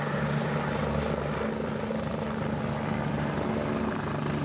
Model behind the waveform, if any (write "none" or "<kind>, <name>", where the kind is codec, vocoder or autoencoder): none